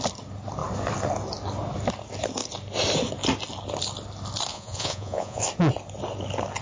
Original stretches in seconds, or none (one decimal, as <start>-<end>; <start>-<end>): 0.0-4.5; 5.4-6.6